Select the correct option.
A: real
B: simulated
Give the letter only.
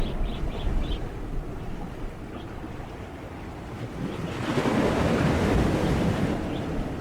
A